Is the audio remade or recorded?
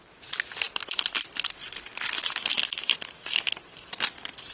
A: recorded